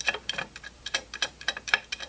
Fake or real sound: fake